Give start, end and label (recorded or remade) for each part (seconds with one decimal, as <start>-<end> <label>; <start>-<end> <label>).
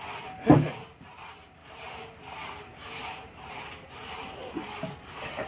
0.0-5.5 recorded